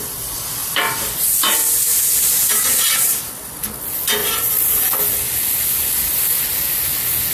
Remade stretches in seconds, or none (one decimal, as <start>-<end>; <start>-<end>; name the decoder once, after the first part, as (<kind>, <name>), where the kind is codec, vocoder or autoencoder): 0.6-1.1 (vocoder, BigVGAN v2); 1.9-3.3; 4.2-4.8